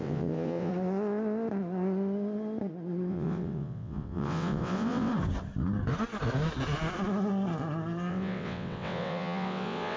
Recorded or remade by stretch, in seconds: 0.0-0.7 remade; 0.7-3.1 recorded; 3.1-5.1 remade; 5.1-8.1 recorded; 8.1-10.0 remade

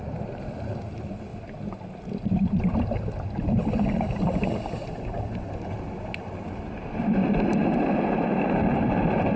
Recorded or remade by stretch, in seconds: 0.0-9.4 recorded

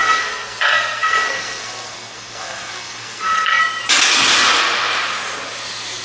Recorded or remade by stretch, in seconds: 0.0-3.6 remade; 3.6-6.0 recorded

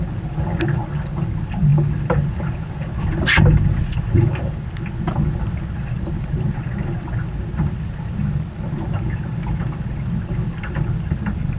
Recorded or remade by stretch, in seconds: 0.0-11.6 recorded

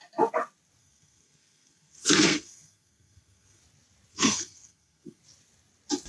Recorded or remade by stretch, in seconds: 0.0-0.8 recorded; 0.8-3.6 remade; 3.6-4.1 recorded; 4.1-5.2 remade; 5.2-6.1 recorded

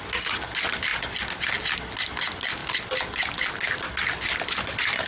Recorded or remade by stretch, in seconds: 0.0-5.1 recorded